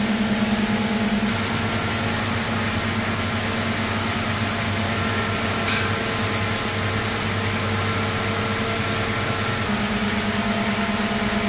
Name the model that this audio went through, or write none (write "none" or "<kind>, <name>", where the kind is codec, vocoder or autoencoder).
none